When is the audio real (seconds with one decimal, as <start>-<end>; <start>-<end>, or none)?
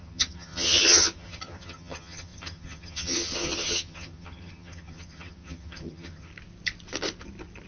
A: 6.3-7.7